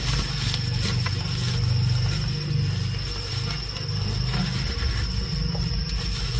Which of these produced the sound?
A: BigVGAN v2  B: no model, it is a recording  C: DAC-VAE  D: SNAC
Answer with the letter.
B